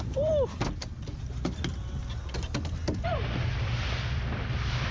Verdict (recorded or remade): recorded